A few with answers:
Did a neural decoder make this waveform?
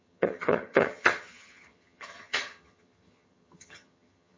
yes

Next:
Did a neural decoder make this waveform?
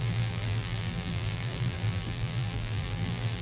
yes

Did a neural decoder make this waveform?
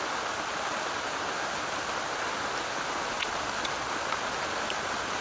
no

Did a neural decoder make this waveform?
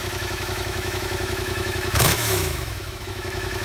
yes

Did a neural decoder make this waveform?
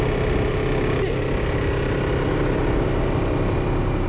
no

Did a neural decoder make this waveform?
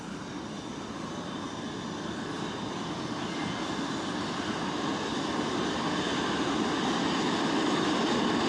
no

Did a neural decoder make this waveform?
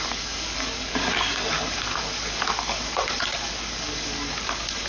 yes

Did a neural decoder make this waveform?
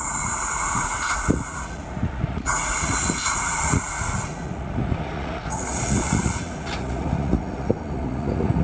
yes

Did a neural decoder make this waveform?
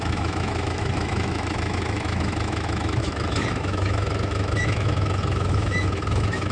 yes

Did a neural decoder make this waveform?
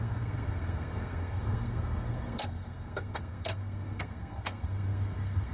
yes